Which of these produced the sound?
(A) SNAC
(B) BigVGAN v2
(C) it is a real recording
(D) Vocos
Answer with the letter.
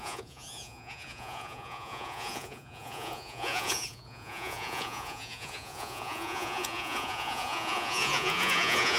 D